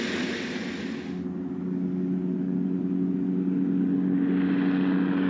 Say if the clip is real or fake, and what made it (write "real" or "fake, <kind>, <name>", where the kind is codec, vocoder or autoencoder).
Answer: real